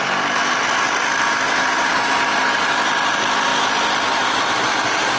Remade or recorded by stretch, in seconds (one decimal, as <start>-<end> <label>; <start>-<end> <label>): 0.0-5.2 recorded